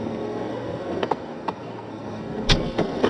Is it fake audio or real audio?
fake